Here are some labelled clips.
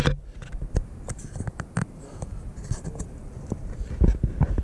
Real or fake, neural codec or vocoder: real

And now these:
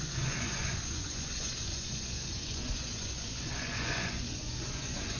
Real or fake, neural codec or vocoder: fake, vocoder, Vocos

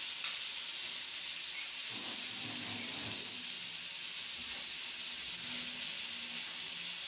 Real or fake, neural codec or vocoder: real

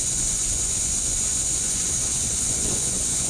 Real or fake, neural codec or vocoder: fake, vocoder, Vocos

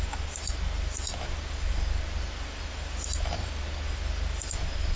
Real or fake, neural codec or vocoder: real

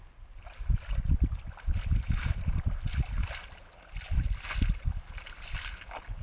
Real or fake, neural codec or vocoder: real